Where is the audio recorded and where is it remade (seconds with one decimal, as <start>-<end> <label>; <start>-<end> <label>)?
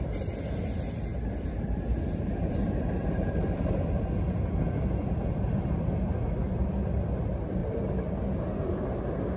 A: 0.0-1.1 recorded; 1.1-3.8 remade; 3.8-7.6 recorded; 7.6-8.1 remade; 8.1-9.4 recorded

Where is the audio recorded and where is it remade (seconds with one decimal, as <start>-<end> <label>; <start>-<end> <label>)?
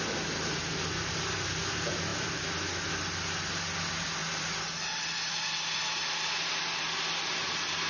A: 0.0-4.2 recorded; 4.2-4.8 remade; 4.8-7.9 recorded